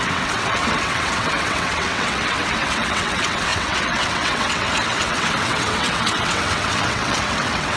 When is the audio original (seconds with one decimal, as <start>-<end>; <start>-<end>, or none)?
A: none